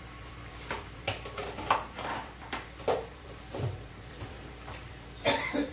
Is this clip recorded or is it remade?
remade